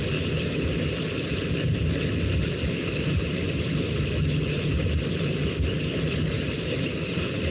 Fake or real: real